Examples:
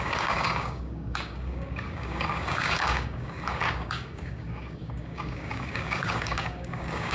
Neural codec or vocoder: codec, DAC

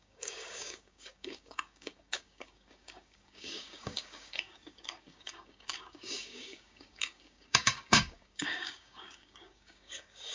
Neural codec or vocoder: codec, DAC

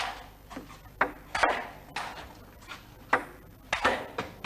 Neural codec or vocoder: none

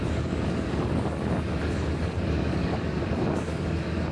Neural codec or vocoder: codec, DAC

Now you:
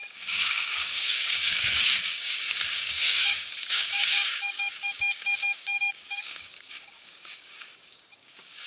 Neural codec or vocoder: codec, DAC